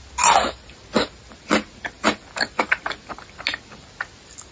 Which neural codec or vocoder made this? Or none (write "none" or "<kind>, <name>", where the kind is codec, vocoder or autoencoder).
none